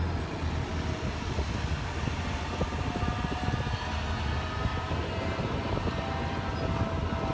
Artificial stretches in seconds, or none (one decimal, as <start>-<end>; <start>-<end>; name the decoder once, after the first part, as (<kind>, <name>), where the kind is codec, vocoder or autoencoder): none